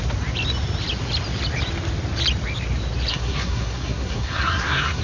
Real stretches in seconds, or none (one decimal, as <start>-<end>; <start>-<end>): 0.0-3.1